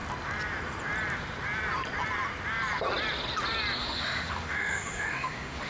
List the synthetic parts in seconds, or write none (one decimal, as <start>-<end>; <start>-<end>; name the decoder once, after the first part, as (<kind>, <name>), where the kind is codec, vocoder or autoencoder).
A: 3.8-5.7 (autoencoder, DAC-VAE)